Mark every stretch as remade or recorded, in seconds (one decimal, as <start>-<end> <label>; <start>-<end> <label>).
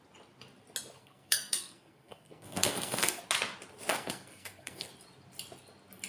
0.0-1.0 recorded; 1.0-3.2 remade; 3.2-3.9 recorded; 3.9-4.9 remade; 4.9-6.1 recorded